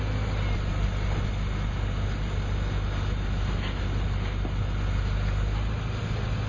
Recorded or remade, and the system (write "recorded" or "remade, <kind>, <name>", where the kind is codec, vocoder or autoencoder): recorded